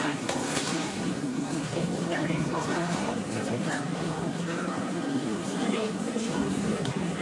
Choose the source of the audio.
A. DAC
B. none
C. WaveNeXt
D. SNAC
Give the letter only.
D